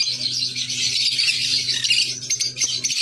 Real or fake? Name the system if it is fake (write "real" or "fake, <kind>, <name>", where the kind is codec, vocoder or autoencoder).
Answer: real